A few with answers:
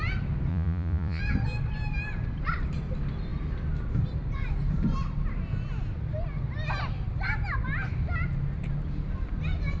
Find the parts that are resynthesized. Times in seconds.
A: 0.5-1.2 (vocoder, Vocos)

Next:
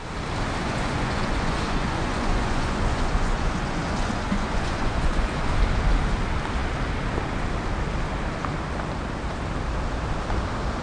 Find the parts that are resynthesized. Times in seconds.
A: 0.6-5.5 (vocoder, Vocos)

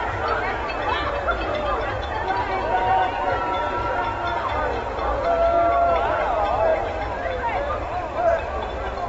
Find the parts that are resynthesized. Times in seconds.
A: none

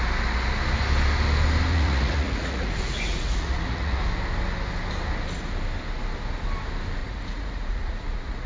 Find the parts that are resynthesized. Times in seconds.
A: 1.7-4.0 (vocoder, Vocos); 7.0-8.5

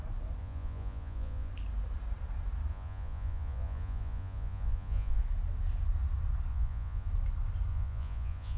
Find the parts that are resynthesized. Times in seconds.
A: 0.4-1.5 (vocoder, Vocos); 2.7-5.2; 6.5-7.1; 7.7-8.6